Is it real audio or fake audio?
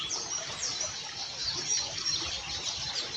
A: real